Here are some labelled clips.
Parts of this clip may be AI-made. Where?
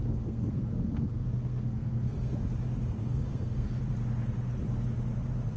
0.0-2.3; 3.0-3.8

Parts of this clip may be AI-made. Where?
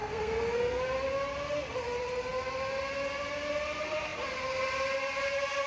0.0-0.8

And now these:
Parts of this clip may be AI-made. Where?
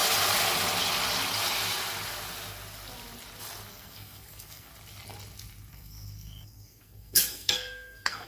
3.7-4.7; 5.7-8.3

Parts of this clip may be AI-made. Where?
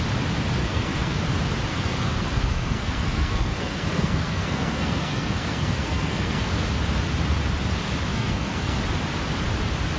0.6-1.2; 1.7-6.5; 8.1-8.8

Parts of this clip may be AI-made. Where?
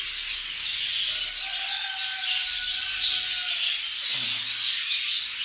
none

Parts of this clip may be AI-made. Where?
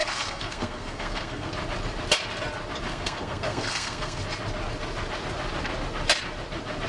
0.0-1.5; 2.9-4.2